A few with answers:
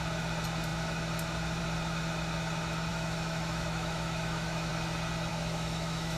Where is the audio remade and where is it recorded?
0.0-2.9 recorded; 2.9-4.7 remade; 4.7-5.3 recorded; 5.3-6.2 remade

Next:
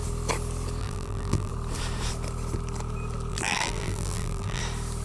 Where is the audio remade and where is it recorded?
0.0-0.8 recorded; 0.8-1.5 remade; 1.5-3.3 recorded; 3.3-4.6 remade; 4.6-5.0 recorded

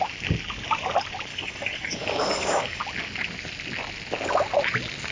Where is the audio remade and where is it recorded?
0.0-1.3 recorded; 1.3-2.8 remade; 2.8-5.1 recorded

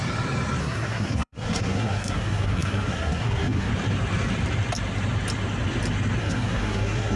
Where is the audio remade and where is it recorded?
0.0-0.6 recorded; 0.6-3.7 remade; 3.7-6.2 recorded; 6.2-7.2 remade

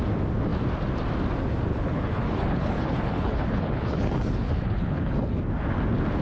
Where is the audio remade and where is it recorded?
0.0-1.7 recorded; 1.7-5.4 remade; 5.4-6.2 recorded

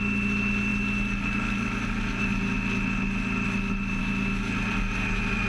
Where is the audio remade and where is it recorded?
0.0-5.5 recorded

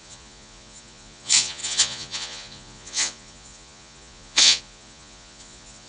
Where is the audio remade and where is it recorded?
0.0-5.9 remade

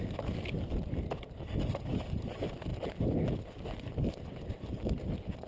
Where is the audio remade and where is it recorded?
0.0-5.5 recorded